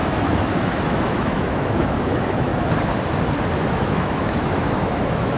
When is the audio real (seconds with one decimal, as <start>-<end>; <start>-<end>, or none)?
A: 2.5-3.7